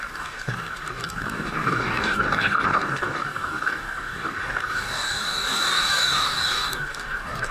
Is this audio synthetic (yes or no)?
yes